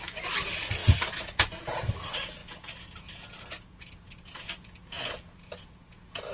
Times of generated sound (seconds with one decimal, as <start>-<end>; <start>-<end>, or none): 0.8-1.9; 2.4-6.3